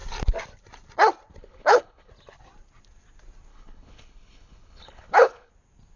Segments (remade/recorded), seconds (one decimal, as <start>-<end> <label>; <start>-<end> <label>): 0.0-1.4 recorded; 1.4-2.1 remade; 2.1-3.5 recorded; 3.5-5.5 remade; 5.5-6.0 recorded